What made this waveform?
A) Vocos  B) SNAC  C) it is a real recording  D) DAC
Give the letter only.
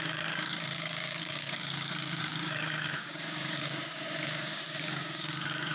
D